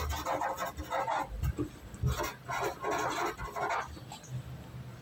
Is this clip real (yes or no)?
yes